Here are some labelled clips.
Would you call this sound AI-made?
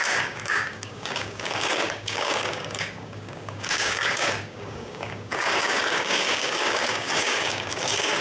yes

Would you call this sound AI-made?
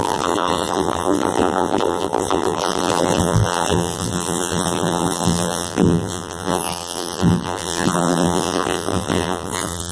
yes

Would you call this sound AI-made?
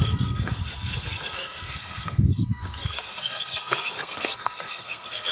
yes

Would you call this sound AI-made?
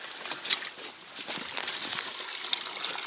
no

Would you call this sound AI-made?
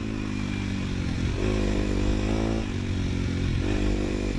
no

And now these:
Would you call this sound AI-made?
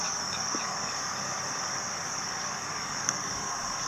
yes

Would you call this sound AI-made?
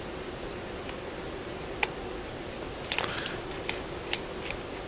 no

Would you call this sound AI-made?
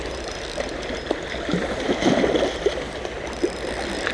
no